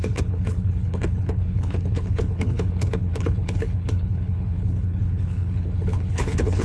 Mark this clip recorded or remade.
remade